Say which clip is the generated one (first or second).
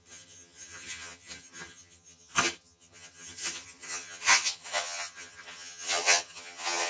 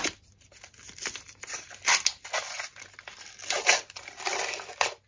first